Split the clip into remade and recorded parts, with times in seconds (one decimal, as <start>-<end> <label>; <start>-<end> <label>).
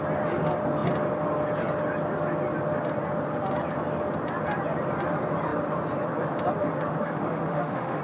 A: 0.0-7.0 recorded; 7.0-8.0 remade